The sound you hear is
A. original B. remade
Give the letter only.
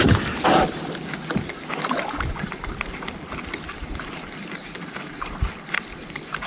A